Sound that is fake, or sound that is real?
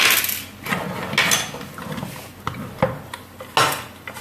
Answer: real